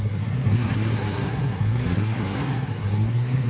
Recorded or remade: remade